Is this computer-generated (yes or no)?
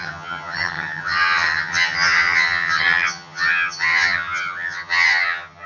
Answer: yes